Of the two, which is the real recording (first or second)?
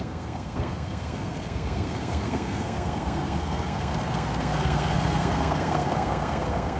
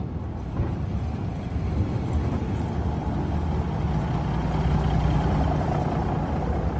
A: second